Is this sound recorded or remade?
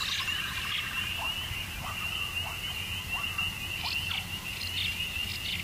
recorded